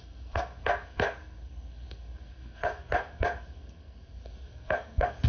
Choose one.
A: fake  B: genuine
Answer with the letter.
A